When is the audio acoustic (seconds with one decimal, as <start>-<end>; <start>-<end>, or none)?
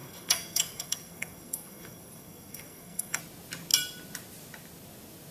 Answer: 3.2-5.3